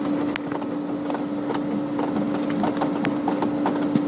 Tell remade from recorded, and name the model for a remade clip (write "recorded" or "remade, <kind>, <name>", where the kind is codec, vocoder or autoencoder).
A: recorded